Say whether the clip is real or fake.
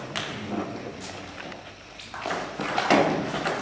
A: real